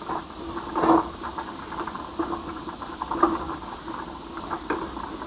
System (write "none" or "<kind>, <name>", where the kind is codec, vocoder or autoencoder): none